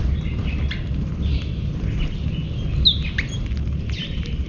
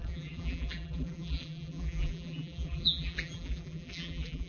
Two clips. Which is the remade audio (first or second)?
second